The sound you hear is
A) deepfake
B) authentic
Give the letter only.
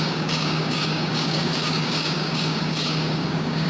A